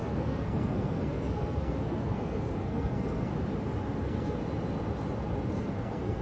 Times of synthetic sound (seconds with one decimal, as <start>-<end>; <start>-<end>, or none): 0.0-3.3; 4.0-4.4; 5.5-6.2